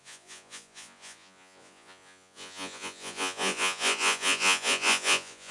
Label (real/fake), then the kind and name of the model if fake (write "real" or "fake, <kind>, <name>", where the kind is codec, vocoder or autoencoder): fake, vocoder, Vocos